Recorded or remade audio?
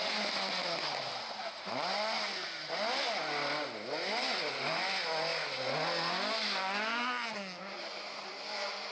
recorded